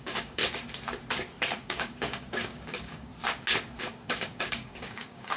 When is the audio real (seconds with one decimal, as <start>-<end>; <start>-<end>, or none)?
0.4-1.6; 3.1-3.8